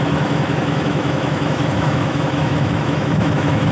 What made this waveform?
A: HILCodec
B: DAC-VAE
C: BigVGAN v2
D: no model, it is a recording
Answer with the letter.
B